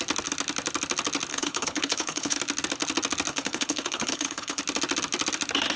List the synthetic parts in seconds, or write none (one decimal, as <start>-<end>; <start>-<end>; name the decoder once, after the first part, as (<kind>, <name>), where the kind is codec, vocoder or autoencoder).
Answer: 1.3-2.4 (codec, HILCodec); 3.3-4.6